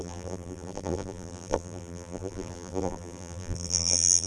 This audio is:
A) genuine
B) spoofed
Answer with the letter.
B